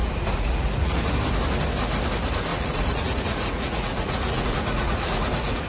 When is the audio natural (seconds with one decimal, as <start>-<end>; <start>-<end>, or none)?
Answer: 1.1-2.5